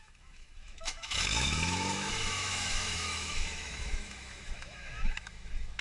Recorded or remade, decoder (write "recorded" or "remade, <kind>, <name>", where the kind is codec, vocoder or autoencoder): remade, autoencoder, DAC-VAE